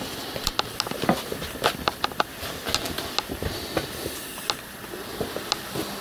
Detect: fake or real real